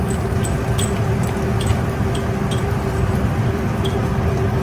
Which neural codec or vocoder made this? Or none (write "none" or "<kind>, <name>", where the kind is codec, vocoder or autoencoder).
none